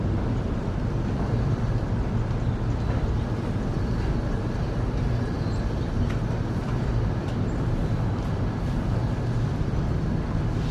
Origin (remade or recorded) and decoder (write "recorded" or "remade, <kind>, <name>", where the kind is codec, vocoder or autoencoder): recorded